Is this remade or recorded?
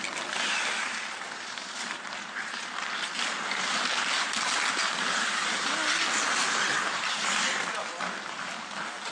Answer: recorded